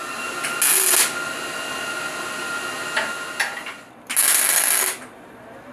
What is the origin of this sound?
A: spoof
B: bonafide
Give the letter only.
B